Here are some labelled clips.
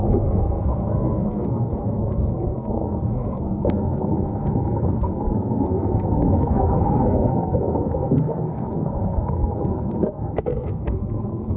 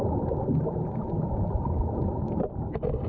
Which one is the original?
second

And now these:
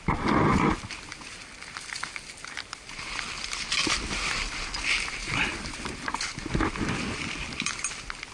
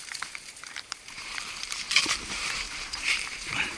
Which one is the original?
first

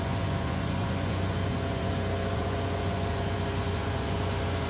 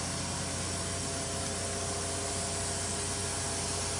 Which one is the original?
second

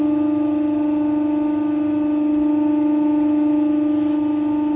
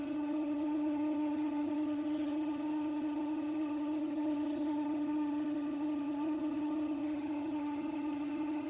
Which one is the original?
first